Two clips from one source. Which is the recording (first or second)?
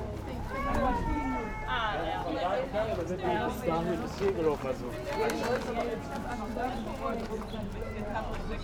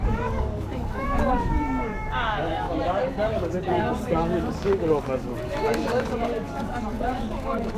first